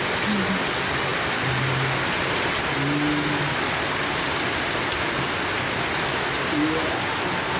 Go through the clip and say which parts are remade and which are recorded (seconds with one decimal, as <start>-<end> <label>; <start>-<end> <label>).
0.0-7.6 recorded